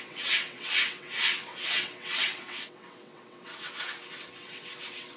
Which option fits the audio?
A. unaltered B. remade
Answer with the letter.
B